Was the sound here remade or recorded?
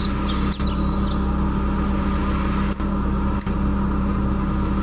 recorded